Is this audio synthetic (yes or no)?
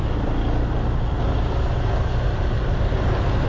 no